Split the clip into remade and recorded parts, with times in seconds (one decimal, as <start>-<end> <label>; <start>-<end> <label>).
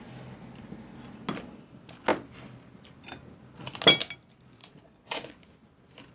0.0-4.6 recorded; 4.6-5.3 remade; 5.3-6.1 recorded